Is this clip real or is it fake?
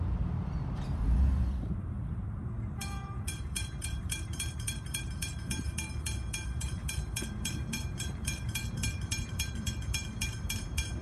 fake